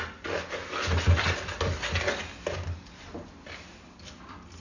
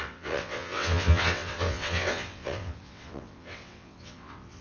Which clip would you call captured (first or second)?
first